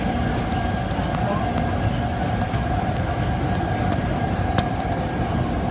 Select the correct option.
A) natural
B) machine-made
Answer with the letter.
A